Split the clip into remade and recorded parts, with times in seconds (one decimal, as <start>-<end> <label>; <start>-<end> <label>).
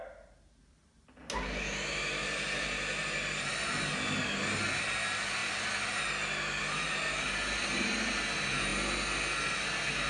0.0-10.1 recorded